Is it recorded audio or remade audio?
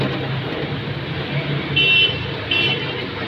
recorded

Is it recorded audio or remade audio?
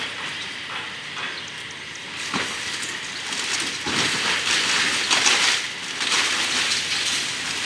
recorded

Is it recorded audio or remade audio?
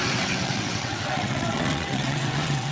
remade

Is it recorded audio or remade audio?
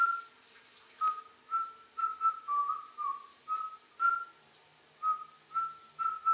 recorded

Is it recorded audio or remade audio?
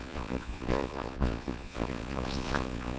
remade